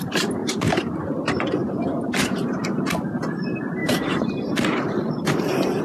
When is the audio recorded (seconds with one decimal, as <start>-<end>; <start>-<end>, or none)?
0.0-0.4; 0.9-1.6; 2.8-3.8; 5.1-5.8